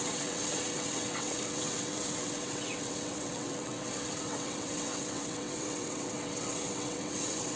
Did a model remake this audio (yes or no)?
yes